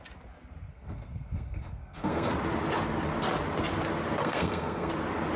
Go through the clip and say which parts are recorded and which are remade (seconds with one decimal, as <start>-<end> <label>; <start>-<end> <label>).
0.0-0.7 recorded; 0.7-2.3 remade; 2.3-4.2 recorded; 4.2-4.9 remade; 4.9-5.4 recorded